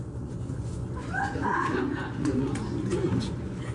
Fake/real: fake